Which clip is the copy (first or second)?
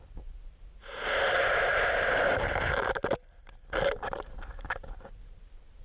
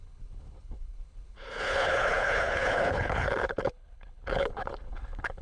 second